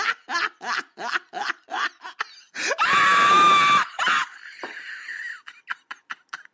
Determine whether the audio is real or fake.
real